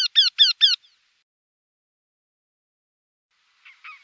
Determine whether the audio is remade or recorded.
recorded